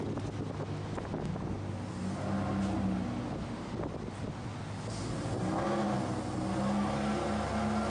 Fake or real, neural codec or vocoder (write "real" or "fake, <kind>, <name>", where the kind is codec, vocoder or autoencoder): real